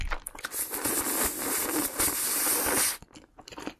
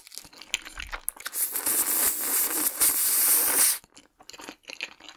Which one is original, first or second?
second